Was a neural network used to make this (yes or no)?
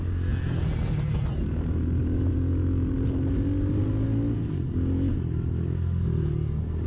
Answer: no